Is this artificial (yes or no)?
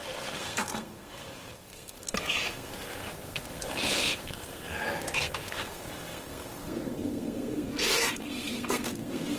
yes